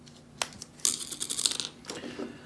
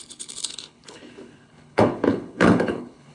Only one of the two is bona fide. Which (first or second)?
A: first